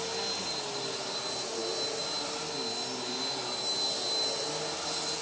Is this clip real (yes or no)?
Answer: yes